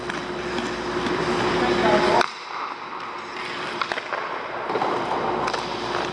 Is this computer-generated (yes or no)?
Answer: no